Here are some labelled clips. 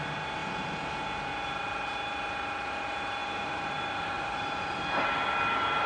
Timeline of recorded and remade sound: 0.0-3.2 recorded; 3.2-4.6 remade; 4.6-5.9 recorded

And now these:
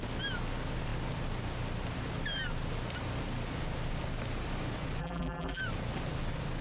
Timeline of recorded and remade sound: 0.0-5.0 recorded; 5.0-5.6 remade; 5.6-6.6 recorded

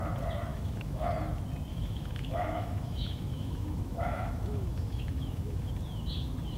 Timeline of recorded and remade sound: 0.0-0.5 recorded; 0.5-1.1 remade; 1.1-1.7 recorded; 1.7-5.7 remade; 5.7-6.6 recorded

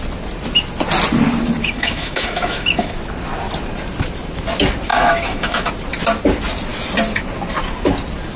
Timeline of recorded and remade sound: 0.0-1.6 recorded; 1.6-2.9 remade; 2.9-4.9 recorded; 4.9-5.7 remade; 5.7-8.4 recorded